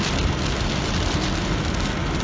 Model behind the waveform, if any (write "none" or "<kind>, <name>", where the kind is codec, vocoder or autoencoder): none